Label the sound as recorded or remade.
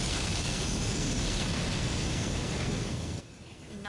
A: remade